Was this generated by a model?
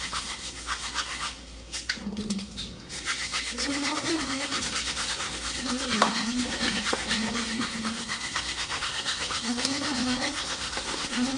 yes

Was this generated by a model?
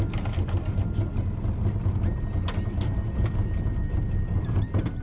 no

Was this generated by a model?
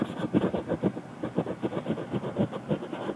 no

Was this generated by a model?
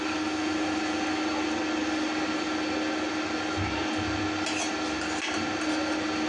no